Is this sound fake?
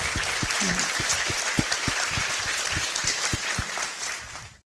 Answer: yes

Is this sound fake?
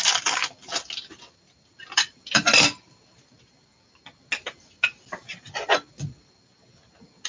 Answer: no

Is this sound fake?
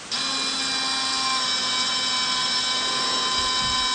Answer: no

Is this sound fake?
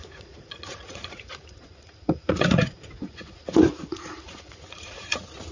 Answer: yes